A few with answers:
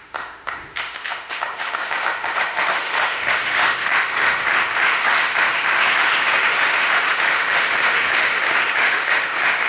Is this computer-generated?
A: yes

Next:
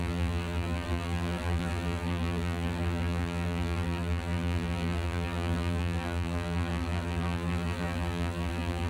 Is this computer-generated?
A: yes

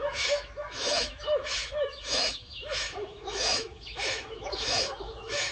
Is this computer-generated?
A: yes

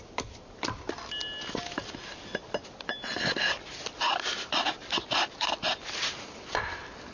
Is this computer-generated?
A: no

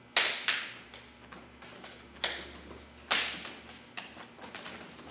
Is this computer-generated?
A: no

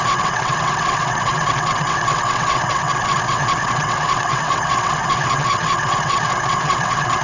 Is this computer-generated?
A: yes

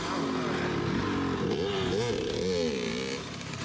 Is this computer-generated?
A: no